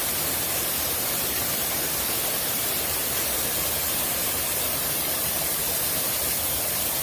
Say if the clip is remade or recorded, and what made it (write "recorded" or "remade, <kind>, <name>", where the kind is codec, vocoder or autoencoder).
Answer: remade, vocoder, BigVGAN v2